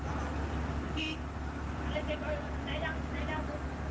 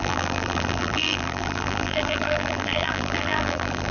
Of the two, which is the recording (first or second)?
first